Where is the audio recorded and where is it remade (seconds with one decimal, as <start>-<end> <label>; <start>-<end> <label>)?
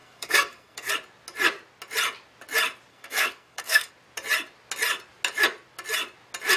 0.0-0.9 remade; 0.9-2.9 recorded; 2.9-3.9 remade; 3.9-6.6 recorded